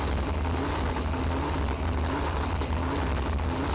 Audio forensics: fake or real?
real